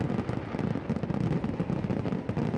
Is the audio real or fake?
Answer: real